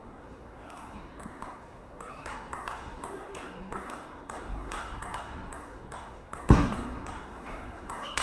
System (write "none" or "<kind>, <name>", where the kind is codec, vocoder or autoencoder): codec, SNAC